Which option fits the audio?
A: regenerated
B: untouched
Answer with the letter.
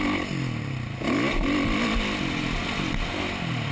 B